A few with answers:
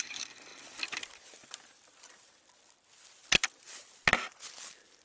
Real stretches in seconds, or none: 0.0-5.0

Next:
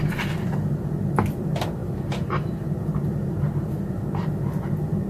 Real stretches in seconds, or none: 0.0-1.8; 4.0-5.1